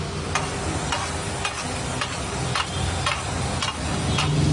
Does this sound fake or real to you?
real